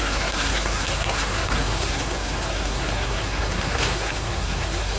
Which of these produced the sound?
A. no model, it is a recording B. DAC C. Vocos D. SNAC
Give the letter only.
D